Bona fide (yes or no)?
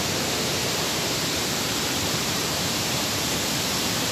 no